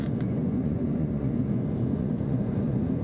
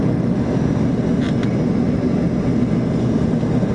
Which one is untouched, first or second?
second